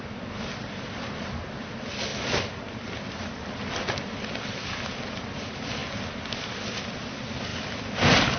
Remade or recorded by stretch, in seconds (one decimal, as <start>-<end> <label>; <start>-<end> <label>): 0.0-8.4 recorded